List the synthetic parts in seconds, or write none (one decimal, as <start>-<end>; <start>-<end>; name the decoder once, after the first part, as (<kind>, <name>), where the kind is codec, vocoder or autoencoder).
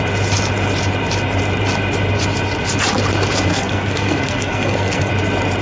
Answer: 3.5-5.1 (codec, SNAC)